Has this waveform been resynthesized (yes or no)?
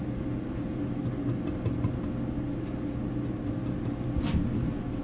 no